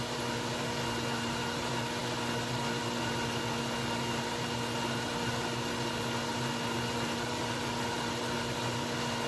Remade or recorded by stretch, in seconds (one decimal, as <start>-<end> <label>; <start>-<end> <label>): 0.0-9.3 recorded